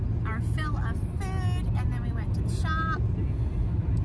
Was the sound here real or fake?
real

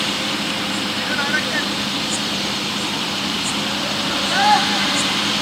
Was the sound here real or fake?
fake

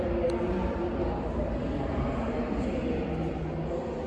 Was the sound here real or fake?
real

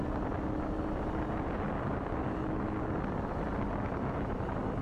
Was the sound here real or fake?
real